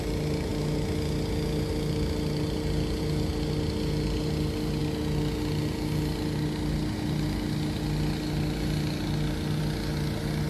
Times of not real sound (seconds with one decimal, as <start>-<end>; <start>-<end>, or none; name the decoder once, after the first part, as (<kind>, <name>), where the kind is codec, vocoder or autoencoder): none